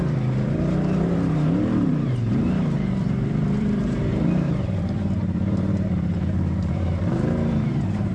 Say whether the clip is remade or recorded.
remade